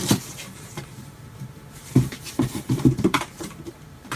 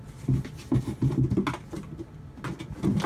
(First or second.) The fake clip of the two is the first